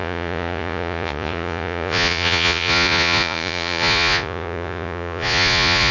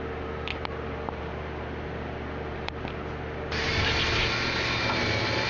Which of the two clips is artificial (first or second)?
first